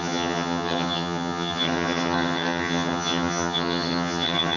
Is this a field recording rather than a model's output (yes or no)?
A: no